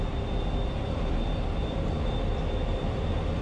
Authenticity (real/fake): real